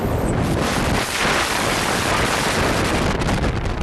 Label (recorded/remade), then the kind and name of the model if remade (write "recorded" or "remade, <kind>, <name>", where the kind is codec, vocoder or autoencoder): recorded